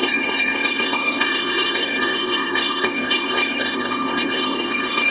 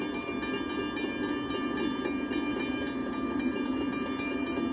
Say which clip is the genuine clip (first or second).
second